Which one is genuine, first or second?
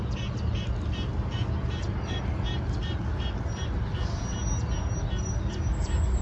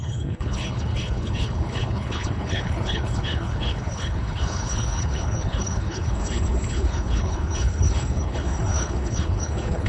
first